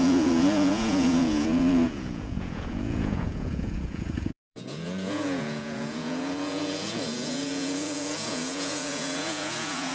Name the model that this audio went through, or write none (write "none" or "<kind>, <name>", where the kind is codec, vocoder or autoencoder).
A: vocoder, Vocos